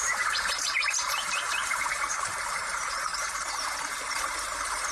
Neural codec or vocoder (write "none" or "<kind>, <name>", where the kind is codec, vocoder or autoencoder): vocoder, BigVGAN v2